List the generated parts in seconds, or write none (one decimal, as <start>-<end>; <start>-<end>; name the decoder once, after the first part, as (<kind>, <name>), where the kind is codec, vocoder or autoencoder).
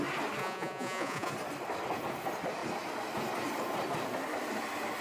0.4-1.3 (vocoder, Vocos)